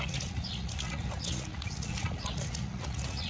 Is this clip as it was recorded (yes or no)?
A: no